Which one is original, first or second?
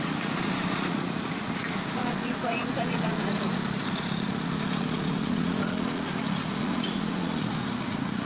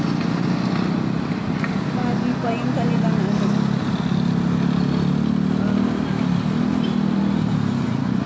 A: second